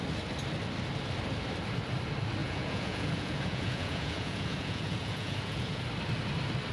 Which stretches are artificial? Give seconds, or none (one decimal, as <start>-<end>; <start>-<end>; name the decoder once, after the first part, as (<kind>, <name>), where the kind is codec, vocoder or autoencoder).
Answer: 2.4-5.8 (vocoder, Vocos)